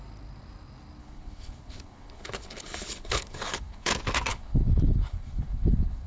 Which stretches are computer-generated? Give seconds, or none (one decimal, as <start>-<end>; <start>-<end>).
1.0-3.9; 4.3-6.1